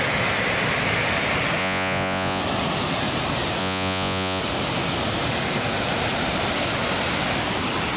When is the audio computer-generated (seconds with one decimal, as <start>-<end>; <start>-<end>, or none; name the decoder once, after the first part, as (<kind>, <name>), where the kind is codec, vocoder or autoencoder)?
1.6-2.4 (vocoder, Vocos); 3.6-4.4